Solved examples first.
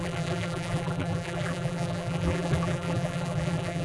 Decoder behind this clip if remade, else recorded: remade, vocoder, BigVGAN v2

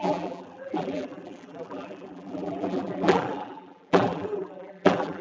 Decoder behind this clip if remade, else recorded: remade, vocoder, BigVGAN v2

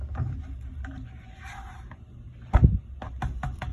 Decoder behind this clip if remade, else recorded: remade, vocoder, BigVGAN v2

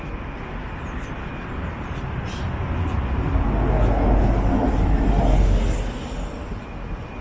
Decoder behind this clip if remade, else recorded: recorded